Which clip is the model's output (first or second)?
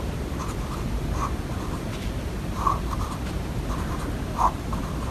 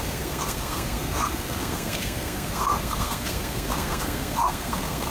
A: second